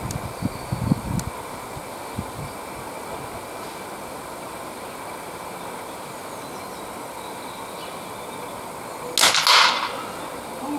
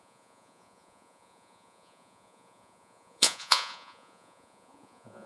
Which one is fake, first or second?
second